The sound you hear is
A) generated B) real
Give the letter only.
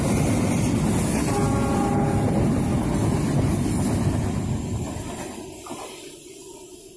B